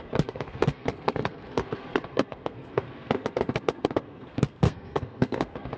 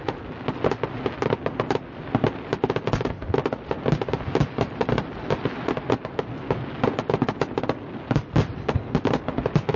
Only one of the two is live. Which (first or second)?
second